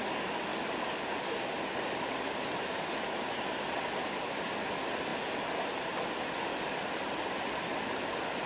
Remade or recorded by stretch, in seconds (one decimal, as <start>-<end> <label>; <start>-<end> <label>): 0.0-8.5 recorded